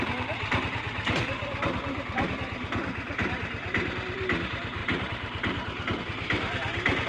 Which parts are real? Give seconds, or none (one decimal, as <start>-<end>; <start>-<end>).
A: none